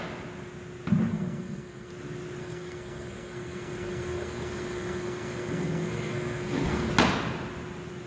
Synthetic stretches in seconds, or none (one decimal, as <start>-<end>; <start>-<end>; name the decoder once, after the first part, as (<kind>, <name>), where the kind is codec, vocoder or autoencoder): 1.1-1.9 (codec, SNAC); 2.4-6.9